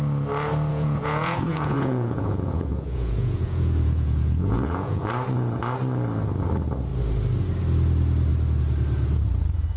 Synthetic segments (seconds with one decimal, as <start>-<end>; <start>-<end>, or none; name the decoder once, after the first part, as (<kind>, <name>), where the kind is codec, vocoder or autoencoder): 0.7-5.1 (vocoder, Vocos)